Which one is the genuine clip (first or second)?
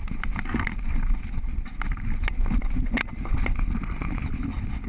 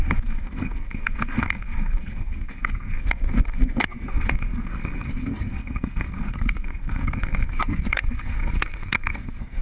first